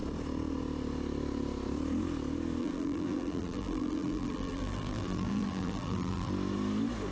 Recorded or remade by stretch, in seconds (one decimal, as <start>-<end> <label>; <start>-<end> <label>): 0.0-2.6 recorded; 2.6-6.3 remade; 6.3-7.1 recorded